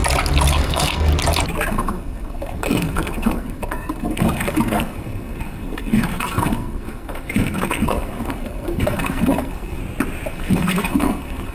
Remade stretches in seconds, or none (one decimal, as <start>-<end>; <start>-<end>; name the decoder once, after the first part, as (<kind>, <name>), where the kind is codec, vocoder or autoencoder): 0.5-1.1 (codec, SNAC); 1.7-9.8; 10.3-11.5